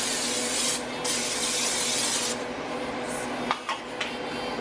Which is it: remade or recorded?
recorded